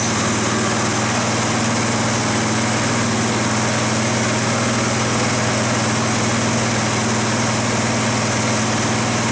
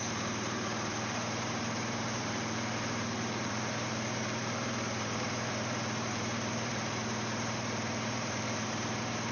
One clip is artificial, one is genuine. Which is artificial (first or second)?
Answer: second